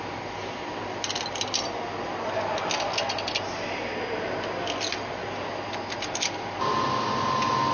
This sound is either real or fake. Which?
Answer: real